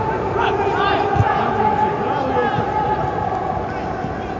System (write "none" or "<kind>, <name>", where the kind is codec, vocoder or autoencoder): none